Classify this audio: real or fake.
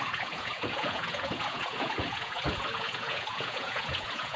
fake